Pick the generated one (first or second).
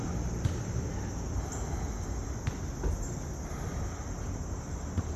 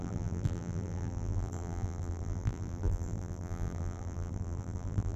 second